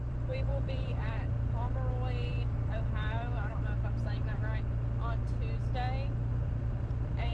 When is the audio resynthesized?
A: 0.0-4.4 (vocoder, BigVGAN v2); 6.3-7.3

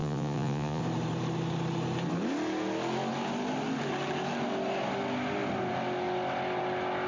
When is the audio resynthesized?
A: 0.0-0.8 (vocoder, Vocos)

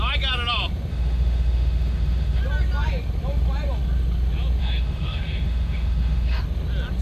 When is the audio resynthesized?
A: 0.9-2.4 (autoencoder, DAC-VAE); 4.6-6.4

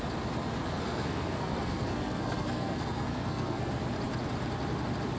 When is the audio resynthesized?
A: 0.6-3.7 (codec, SNAC)